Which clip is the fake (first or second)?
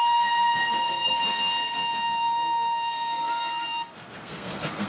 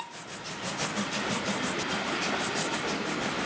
first